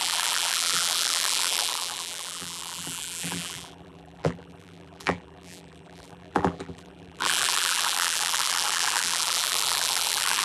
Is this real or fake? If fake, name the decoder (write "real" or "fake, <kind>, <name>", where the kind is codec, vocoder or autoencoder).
fake, vocoder, BigVGAN v2